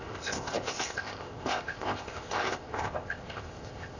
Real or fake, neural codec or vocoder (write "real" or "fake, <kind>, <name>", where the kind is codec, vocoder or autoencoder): fake, codec, ZipCodec